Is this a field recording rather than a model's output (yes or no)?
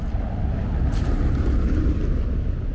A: yes